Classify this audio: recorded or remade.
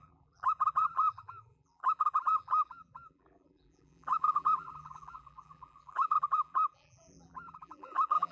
remade